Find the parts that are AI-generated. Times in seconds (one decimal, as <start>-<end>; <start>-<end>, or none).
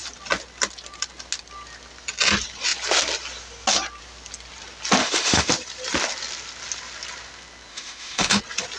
5.0-5.5; 7.7-8.4